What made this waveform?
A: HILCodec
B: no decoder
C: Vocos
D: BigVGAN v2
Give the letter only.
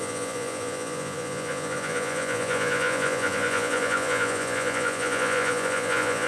C